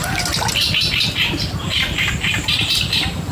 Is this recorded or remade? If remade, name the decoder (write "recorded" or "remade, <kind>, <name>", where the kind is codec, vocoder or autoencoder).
recorded